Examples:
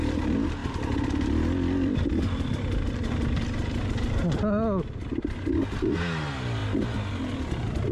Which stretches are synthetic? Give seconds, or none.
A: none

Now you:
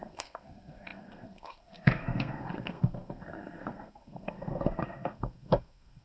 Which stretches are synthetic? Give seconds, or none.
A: 0.0-6.0

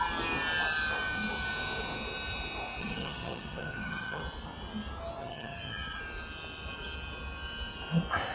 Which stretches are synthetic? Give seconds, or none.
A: 2.8-4.2; 5.2-6.0

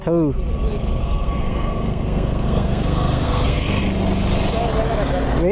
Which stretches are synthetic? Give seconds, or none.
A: 1.0-3.8